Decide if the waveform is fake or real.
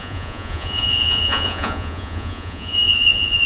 fake